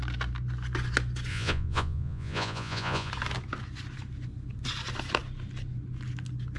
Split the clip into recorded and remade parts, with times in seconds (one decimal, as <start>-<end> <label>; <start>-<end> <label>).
0.0-1.3 recorded; 1.3-3.1 remade; 3.1-6.6 recorded